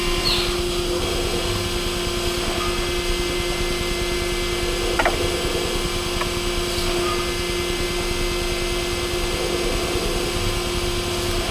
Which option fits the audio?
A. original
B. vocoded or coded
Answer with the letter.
A